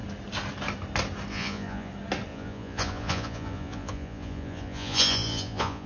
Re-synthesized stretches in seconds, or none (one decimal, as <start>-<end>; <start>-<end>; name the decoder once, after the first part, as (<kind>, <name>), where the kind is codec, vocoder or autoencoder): 1.3-1.9 (vocoder, Vocos); 2.3-5.9